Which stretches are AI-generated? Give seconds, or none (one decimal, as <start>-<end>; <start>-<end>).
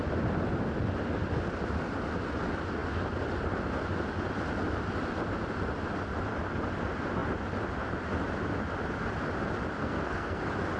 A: 9.8-10.4